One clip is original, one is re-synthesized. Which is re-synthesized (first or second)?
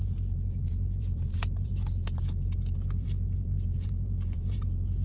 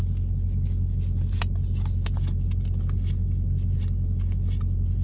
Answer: first